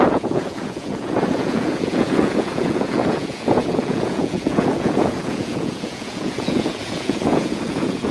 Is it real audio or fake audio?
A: fake